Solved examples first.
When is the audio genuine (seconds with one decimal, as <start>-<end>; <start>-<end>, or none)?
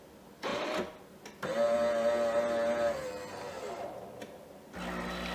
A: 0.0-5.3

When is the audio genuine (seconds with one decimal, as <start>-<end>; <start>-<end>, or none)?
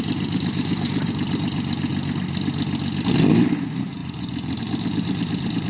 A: 1.9-3.3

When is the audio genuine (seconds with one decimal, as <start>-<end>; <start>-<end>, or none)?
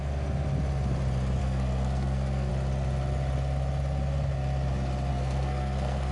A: 0.0-1.4; 2.5-5.1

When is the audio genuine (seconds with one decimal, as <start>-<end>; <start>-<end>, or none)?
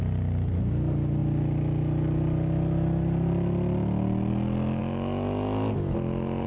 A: 0.0-6.5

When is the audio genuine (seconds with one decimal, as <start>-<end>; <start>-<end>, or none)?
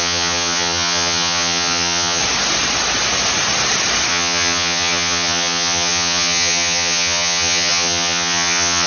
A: 2.2-4.1